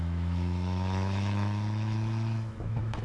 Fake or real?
fake